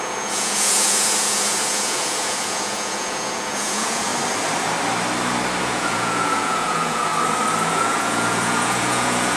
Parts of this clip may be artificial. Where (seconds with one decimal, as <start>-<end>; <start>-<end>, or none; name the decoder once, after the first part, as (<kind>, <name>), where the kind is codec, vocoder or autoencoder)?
0.0-4.1 (vocoder, Vocos); 5.6-7.1; 7.7-9.4